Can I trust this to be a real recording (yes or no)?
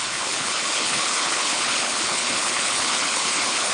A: no